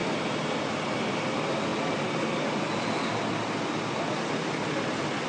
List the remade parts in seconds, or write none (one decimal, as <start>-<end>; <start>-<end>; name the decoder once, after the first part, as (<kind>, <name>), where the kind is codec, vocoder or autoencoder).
none